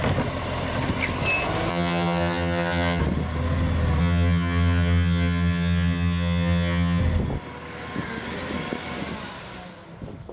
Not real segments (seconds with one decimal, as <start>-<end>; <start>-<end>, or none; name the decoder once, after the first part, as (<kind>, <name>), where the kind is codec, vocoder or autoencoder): 1.7-3.0 (vocoder, HiFi-GAN); 4.0-7.0